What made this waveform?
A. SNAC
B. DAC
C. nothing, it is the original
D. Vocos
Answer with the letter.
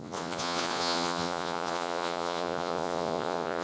D